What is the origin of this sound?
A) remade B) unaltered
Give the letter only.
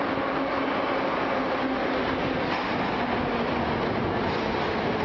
B